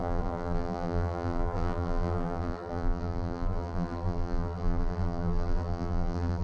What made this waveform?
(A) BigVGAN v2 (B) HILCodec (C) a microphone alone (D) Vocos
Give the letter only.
A